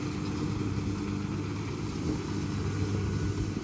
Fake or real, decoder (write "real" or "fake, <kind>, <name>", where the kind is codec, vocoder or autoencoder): real